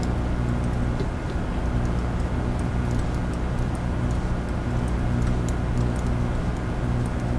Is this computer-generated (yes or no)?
no